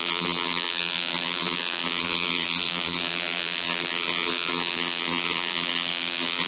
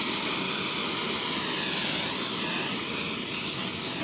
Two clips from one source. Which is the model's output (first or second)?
first